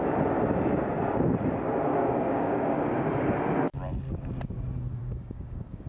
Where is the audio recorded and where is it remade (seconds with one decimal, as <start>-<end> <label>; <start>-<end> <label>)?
0.0-1.9 recorded; 1.9-2.9 remade; 2.9-5.0 recorded; 5.0-5.9 remade